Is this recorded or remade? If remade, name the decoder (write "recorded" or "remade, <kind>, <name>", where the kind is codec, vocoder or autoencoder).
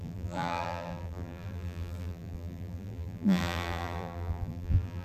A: remade, vocoder, BigVGAN v2